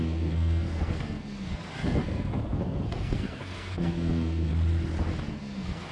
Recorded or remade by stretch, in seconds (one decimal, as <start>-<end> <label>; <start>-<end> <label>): 0.0-4.5 remade; 4.5-5.3 recorded; 5.3-5.9 remade